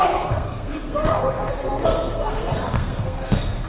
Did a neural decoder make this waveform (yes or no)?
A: yes